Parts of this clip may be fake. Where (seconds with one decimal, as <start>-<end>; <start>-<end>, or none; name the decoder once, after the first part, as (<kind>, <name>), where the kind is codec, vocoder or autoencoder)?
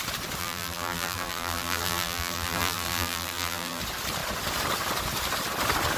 0.4-3.8 (vocoder, BigVGAN v2)